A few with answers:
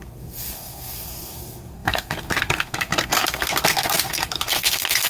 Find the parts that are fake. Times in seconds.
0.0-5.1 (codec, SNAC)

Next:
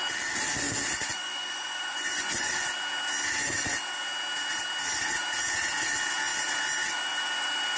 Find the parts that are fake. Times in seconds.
1.1-2.5 (vocoder, Vocos)